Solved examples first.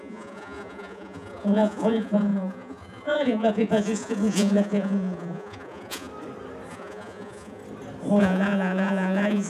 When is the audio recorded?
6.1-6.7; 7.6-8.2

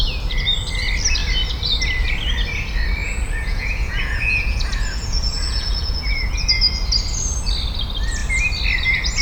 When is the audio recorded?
0.0-3.0; 6.5-9.2

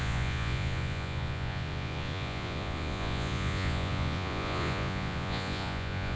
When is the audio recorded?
none

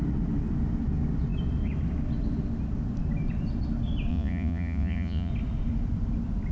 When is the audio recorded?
0.0-4.1; 5.3-6.5

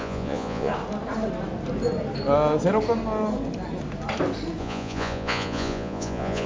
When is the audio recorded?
0.7-4.6

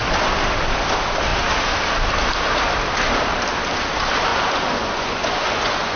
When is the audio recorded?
0.0-4.3

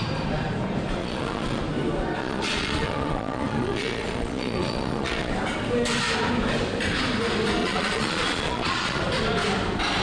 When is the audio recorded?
0.0-1.0; 1.6-2.2; 5.3-7.6; 9.0-10.0